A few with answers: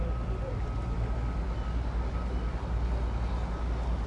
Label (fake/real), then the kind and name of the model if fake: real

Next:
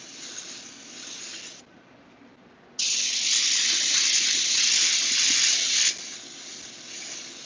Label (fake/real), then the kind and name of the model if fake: real